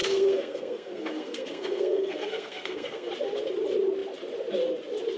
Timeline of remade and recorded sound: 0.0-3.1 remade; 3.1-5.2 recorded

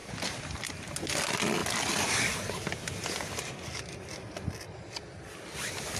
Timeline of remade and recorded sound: 0.0-6.0 recorded

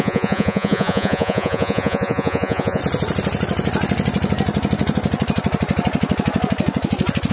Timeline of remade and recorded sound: 0.0-2.8 remade; 2.8-7.3 recorded

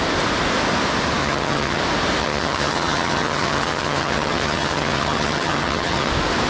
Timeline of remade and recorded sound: 0.0-1.2 recorded; 1.2-1.8 remade; 1.8-2.2 recorded; 2.2-6.1 remade; 6.1-6.5 recorded

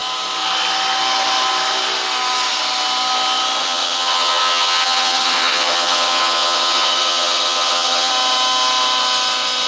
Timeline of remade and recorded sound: 0.0-3.6 recorded; 3.6-8.1 remade; 8.1-9.7 recorded

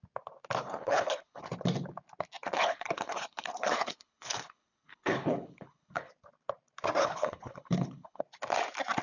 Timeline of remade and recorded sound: 0.0-0.6 recorded; 0.6-1.4 remade; 1.4-2.5 recorded; 2.5-6.1 remade; 6.1-7.0 recorded; 7.0-8.2 remade; 8.2-9.0 recorded

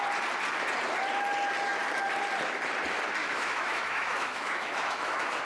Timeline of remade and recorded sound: 0.0-3.2 recorded; 3.2-5.4 remade

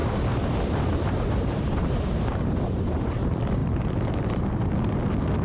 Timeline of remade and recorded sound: 0.0-3.2 remade; 3.2-5.4 recorded